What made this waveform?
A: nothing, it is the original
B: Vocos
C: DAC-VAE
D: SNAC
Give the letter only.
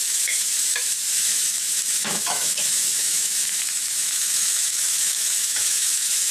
C